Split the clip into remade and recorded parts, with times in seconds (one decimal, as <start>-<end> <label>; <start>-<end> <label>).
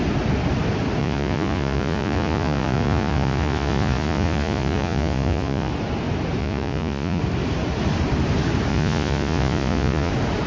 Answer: 0.0-1.0 recorded; 1.0-5.7 remade; 5.7-6.4 recorded; 6.4-7.2 remade; 7.2-8.7 recorded; 8.7-10.1 remade; 10.1-10.5 recorded